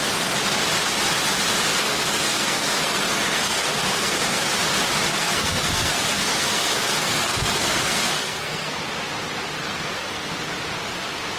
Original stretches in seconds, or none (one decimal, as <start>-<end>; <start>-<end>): 0.0-1.8; 4.5-5.1; 8.8-9.6; 10.3-11.4